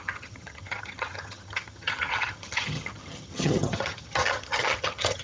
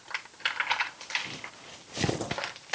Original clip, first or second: second